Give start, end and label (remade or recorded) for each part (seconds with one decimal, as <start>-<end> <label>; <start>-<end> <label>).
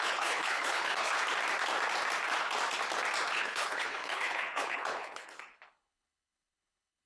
0.0-1.2 remade; 1.2-3.3 recorded; 3.3-7.1 remade